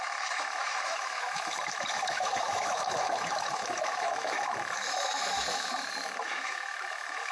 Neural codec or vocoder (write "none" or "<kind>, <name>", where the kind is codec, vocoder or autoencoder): autoencoder, DAC-VAE